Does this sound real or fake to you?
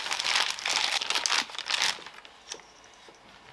real